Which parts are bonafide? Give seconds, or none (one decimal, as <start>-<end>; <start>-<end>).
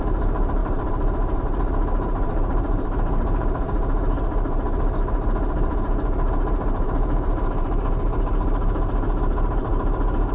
none